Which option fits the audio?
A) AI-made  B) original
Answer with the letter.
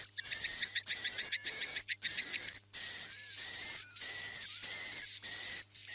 B